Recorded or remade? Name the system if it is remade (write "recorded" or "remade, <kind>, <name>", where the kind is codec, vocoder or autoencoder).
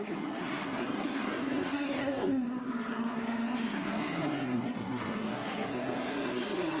remade, codec, SNAC